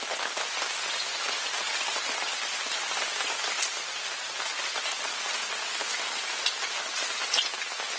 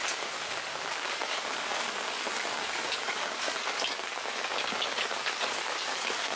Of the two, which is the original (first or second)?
first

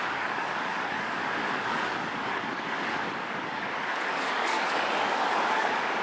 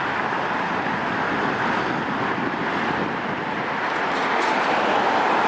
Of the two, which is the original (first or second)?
second